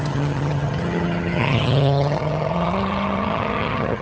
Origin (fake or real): fake